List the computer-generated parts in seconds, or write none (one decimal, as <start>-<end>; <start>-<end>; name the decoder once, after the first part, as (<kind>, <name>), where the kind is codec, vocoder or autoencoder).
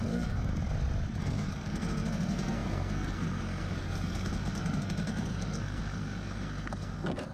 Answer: 0.0-0.5 (codec, SNAC); 1.2-7.3